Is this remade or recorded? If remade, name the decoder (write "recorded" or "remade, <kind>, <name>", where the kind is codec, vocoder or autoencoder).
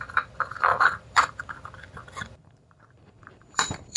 remade, vocoder, BigVGAN v2